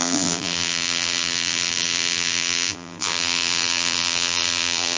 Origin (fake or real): fake